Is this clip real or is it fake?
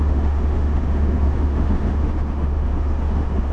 fake